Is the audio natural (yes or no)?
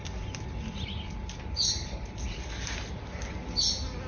yes